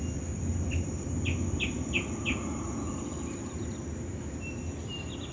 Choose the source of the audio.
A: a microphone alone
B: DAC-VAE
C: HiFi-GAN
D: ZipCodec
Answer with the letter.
A